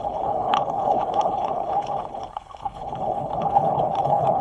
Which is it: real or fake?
fake